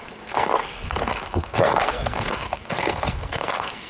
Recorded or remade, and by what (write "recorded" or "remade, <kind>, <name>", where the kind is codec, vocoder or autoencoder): remade, codec, SNAC